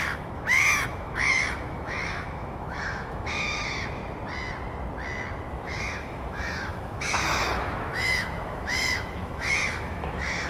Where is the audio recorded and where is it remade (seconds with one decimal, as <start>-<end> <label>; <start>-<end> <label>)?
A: 0.0-4.0 remade; 4.0-5.5 recorded; 5.5-10.5 remade